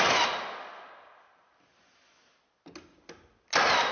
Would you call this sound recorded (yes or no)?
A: yes